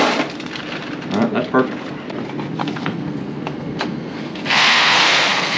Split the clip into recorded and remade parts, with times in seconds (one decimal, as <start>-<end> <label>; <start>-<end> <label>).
0.0-2.6 recorded; 2.6-5.6 remade